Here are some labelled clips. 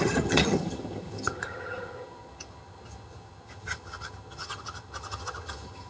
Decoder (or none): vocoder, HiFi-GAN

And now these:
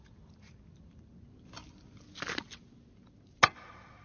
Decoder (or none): none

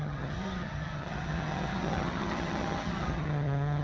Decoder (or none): vocoder, HiFi-GAN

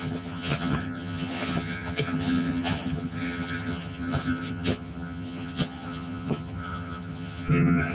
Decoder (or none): vocoder, HiFi-GAN